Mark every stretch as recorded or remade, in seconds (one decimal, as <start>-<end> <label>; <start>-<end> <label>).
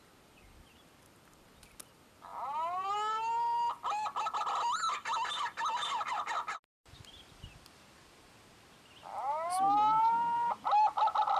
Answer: 0.0-11.4 recorded